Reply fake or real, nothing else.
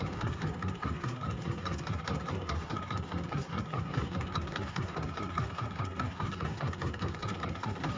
fake